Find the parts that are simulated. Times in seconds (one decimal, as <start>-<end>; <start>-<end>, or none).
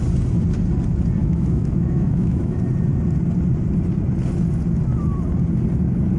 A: 1.2-2.6